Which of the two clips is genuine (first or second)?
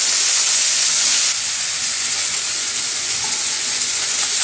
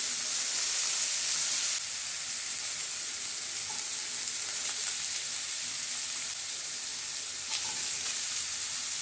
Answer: second